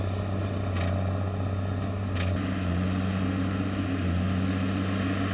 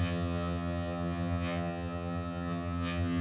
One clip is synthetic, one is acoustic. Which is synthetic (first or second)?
second